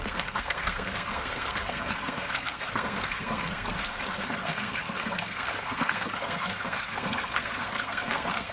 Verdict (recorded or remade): remade